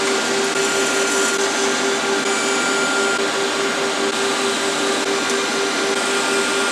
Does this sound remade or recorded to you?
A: recorded